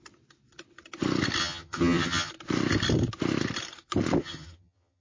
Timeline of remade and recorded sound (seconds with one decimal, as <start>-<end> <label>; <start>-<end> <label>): 0.0-1.4 recorded; 1.4-2.3 remade; 2.3-4.2 recorded; 4.2-5.0 remade